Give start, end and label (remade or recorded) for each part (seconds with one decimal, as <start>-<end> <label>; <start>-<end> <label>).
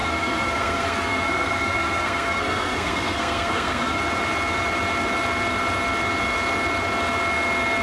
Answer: 0.0-4.0 remade; 4.0-7.8 recorded